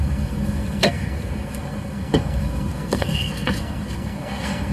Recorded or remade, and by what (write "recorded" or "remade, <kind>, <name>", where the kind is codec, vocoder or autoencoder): remade, codec, SNAC